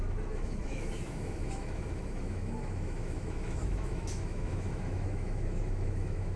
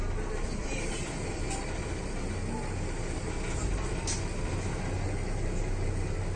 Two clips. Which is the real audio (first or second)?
second